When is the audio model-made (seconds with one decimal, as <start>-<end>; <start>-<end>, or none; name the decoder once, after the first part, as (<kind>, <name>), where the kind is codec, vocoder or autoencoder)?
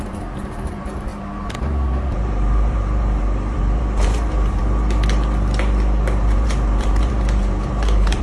0.0-4.6 (vocoder, BigVGAN v2); 6.2-8.2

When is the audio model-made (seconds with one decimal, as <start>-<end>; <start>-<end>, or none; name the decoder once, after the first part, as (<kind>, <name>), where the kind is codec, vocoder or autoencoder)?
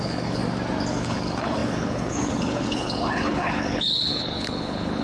0.0-0.4 (codec, HILCodec); 0.9-5.0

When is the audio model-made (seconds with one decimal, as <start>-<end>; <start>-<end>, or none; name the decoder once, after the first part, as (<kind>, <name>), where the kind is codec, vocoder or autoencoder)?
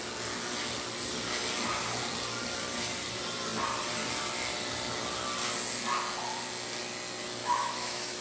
7.4-8.2 (autoencoder, DAC-VAE)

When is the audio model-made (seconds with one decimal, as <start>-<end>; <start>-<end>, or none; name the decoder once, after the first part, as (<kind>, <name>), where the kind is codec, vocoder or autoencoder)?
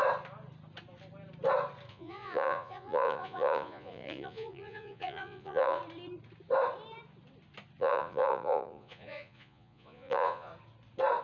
1.9-5.8 (vocoder, Vocos); 7.8-10.5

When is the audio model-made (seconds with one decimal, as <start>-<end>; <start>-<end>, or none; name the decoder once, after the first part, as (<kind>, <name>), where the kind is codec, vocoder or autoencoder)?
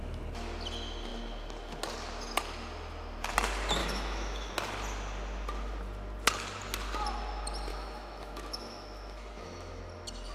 3.8-4.5 (autoencoder, DAC-VAE); 7.7-9.8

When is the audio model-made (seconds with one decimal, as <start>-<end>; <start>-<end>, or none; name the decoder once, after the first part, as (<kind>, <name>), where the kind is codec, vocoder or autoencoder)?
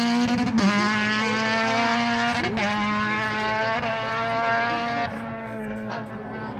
5.3-6.1 (codec, SNAC)